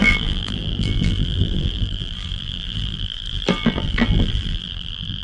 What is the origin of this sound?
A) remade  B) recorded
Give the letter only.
A